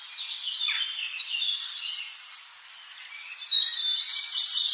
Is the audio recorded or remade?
remade